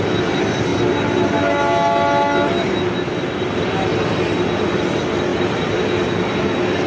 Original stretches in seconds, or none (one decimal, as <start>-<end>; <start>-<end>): 0.0-6.9